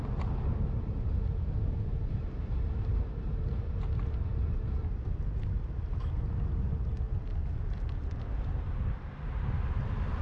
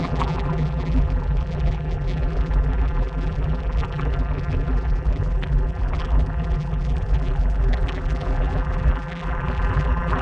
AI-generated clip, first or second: second